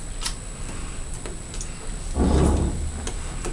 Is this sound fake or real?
real